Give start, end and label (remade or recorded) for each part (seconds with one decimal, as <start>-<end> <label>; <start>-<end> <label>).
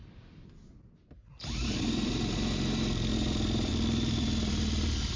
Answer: 0.0-1.8 recorded; 1.8-5.2 remade